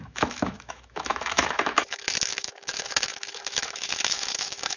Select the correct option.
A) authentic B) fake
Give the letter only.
B